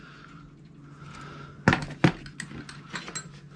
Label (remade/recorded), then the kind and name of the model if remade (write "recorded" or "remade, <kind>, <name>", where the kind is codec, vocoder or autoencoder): recorded